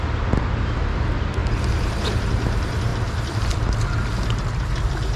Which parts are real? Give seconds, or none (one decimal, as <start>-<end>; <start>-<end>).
0.0-5.2